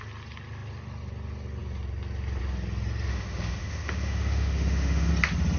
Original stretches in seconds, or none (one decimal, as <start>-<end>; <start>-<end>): 0.0-3.1; 5.1-5.6